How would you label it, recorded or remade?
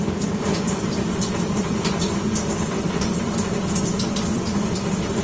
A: remade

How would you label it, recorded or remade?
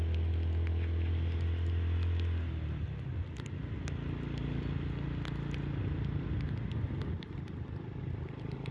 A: recorded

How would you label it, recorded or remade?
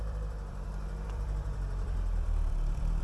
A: remade